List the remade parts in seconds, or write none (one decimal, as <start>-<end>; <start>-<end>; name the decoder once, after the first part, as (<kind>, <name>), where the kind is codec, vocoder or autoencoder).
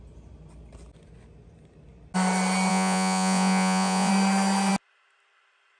2.7-4.1 (vocoder, Vocos)